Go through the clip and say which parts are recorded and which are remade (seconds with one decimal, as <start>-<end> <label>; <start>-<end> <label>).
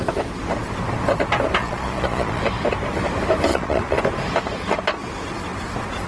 0.0-1.6 recorded; 1.6-2.4 remade; 2.4-3.5 recorded; 3.5-4.0 remade; 4.0-6.1 recorded